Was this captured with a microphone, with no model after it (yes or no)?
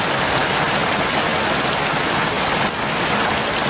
yes